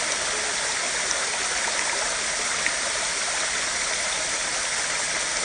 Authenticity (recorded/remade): recorded